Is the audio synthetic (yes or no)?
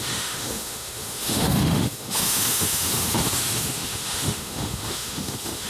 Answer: yes